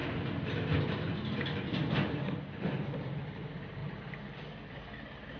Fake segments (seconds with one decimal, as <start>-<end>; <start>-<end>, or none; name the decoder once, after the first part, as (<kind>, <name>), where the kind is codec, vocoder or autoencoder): none